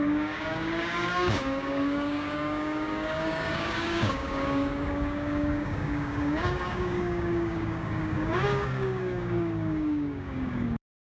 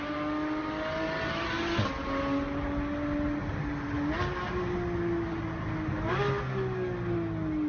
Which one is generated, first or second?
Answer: first